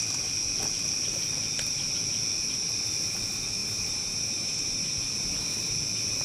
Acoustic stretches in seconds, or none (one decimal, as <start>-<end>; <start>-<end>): 0.0-6.2